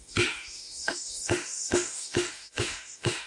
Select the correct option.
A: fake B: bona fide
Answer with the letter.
A